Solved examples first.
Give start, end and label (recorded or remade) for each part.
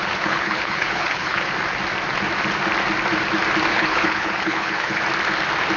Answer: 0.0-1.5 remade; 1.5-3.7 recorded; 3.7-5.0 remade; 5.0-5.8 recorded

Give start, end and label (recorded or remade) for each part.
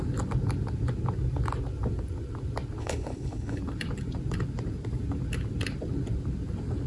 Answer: 0.0-2.8 recorded; 2.8-3.6 remade; 3.6-6.9 recorded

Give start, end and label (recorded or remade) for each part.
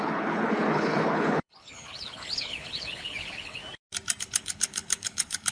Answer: 0.0-3.6 remade; 3.6-4.2 recorded; 4.2-5.5 remade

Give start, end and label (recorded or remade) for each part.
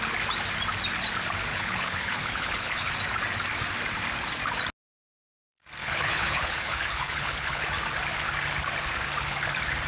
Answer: 0.0-1.5 recorded; 1.5-2.9 remade; 2.9-5.8 recorded; 5.8-7.6 remade; 7.6-9.9 recorded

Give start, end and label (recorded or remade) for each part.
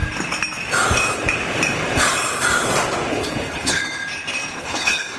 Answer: 0.0-3.1 recorded; 3.1-3.8 remade; 3.8-4.6 recorded; 4.6-5.2 remade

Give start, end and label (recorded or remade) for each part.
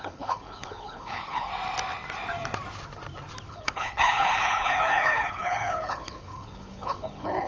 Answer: 0.0-1.5 remade; 1.5-3.5 recorded; 3.5-7.5 remade